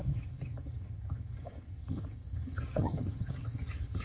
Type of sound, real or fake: fake